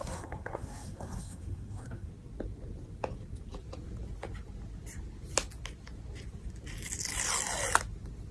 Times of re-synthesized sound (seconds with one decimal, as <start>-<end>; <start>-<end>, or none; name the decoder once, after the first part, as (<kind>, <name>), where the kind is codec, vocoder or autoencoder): 0.0-2.1 (codec, SNAC)